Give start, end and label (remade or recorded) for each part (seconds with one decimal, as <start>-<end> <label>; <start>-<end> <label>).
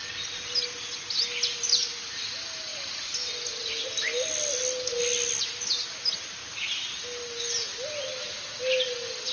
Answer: 0.0-9.3 recorded